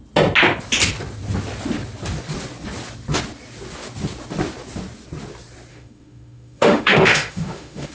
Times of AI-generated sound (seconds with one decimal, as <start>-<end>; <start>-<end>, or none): 5.7-7.9

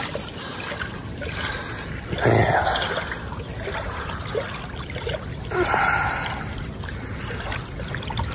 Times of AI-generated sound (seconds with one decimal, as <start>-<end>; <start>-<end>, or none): none

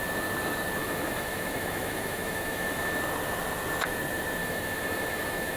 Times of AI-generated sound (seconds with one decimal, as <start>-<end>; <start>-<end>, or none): 0.8-3.0; 4.4-5.6

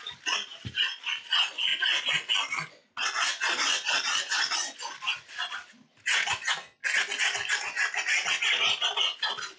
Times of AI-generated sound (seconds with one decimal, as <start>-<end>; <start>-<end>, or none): none

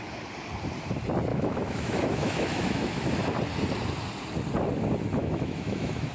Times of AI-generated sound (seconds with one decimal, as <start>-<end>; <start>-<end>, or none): 1.3-3.1; 5.2-6.1

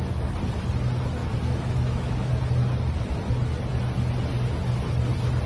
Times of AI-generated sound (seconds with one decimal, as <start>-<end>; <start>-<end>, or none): 1.2-2.3